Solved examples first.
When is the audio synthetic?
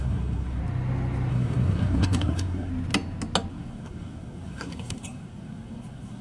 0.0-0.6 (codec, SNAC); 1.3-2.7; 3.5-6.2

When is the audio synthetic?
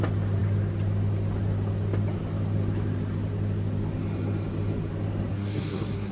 5.3-6.1 (codec, SNAC)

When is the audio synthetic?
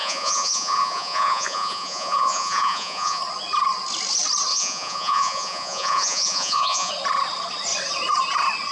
0.0-3.2 (vocoder, Vocos); 4.5-6.9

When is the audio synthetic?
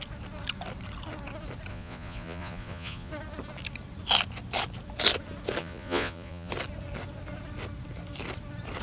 1.7-3.1 (vocoder, Vocos); 5.6-6.5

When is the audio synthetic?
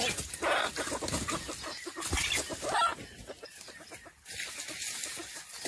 none